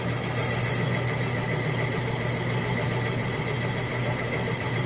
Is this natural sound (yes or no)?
yes